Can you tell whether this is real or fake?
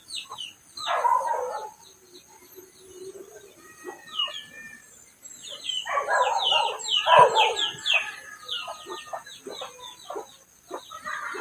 real